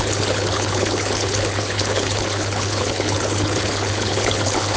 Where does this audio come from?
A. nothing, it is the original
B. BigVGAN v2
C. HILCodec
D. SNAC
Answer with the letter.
C